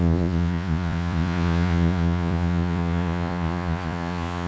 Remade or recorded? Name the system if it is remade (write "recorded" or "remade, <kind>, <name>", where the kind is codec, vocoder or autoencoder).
remade, vocoder, Vocos